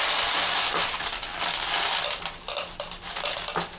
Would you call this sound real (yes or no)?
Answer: yes